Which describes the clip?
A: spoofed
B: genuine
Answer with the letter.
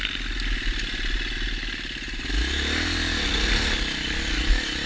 B